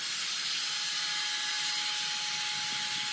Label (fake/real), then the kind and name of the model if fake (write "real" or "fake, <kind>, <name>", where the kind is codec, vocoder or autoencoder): real